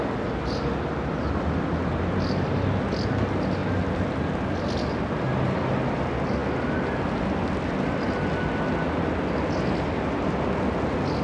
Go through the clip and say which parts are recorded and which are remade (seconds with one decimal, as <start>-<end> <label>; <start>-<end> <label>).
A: 0.0-11.2 recorded